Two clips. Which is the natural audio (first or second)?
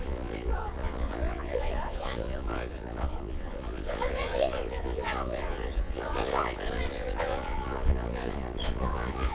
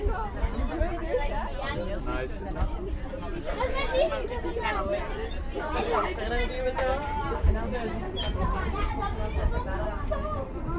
second